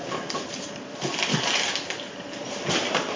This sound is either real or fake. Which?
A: real